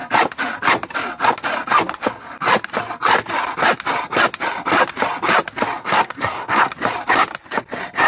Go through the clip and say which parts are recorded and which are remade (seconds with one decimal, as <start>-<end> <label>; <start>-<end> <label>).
0.0-5.8 recorded; 5.8-6.7 remade; 6.7-8.1 recorded